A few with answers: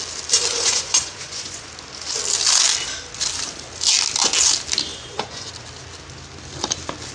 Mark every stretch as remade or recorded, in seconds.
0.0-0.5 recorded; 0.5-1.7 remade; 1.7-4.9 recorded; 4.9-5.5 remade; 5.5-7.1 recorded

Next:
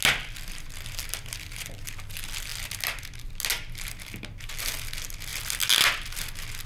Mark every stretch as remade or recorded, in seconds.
0.0-6.7 recorded

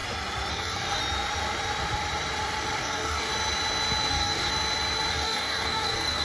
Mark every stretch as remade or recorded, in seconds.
0.0-0.5 recorded; 0.5-1.0 remade; 1.0-2.8 recorded; 2.8-3.3 remade; 3.3-4.1 recorded; 4.1-4.5 remade; 4.5-5.1 recorded; 5.1-6.2 remade

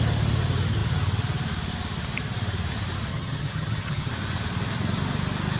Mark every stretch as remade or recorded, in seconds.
0.0-3.1 recorded; 3.1-4.1 remade; 4.1-5.6 recorded

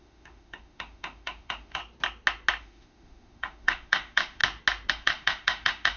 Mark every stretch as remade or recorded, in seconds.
0.0-1.8 remade; 1.8-2.6 recorded; 2.6-4.4 remade; 4.4-4.9 recorded; 4.9-6.0 remade

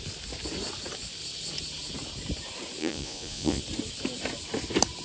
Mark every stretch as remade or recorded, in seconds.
0.0-2.8 recorded; 2.8-3.6 remade; 3.6-5.0 recorded

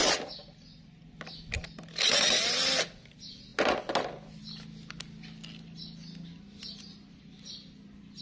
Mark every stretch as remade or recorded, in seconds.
0.0-8.2 recorded